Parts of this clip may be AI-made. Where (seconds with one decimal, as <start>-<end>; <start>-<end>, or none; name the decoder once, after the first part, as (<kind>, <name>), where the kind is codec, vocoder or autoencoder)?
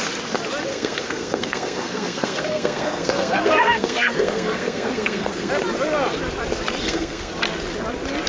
0.7-5.5 (codec, SNAC); 6.8-7.3